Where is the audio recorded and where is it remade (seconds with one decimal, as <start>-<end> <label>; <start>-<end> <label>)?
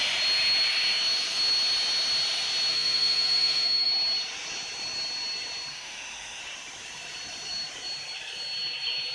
0.0-2.7 recorded; 2.7-3.9 remade; 3.9-5.7 recorded; 5.7-6.4 remade; 6.4-9.1 recorded